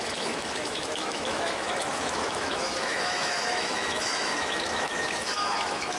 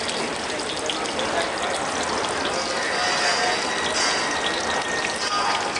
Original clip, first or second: second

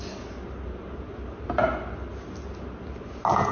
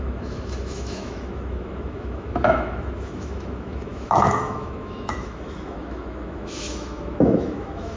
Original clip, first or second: first